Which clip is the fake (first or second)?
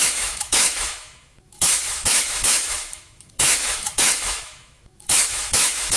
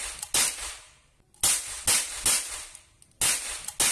first